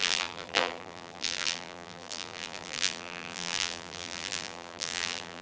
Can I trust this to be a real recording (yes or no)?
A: no